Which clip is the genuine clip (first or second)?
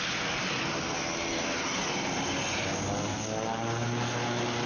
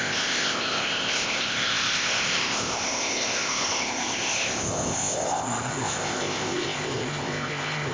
first